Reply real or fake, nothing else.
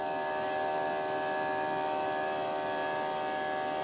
real